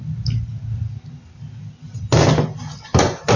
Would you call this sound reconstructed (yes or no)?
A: no